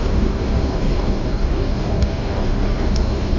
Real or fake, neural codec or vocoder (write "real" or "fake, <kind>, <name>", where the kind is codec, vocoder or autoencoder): fake, codec, DAC